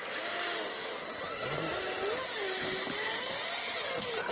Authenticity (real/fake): real